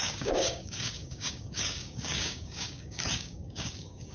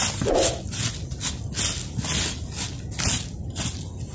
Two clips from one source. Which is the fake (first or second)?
first